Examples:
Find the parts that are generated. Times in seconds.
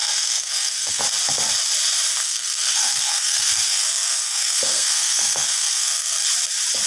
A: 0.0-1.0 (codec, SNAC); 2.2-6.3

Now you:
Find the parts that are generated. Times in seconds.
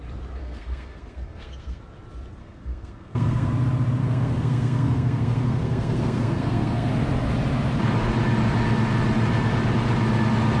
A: 0.4-1.8 (codec, SNAC); 2.4-3.5; 4.0-6.9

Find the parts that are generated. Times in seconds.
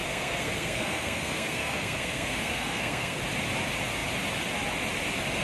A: 0.0-3.2 (codec, SNAC)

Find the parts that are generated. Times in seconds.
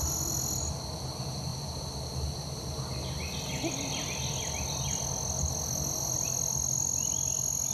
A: none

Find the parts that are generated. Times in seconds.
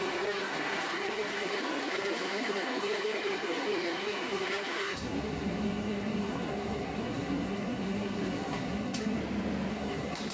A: 0.0-9.2 (codec, SNAC); 9.7-10.3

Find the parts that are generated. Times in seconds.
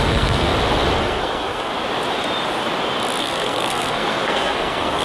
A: 0.0-0.5 (codec, SNAC); 1.0-1.7; 3.2-5.0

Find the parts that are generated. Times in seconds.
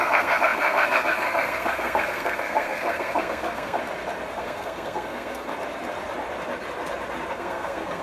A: 0.0-3.8 (codec, SNAC); 4.4-5.5; 7.3-8.0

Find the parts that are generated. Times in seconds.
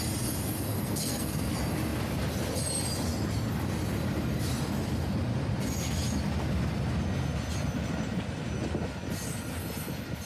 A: 0.7-1.5 (codec, SNAC)